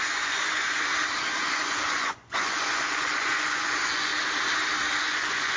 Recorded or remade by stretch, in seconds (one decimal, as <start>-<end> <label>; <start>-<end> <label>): 0.0-0.9 remade; 0.9-1.4 recorded; 1.4-4.1 remade; 4.1-5.0 recorded; 5.0-5.6 remade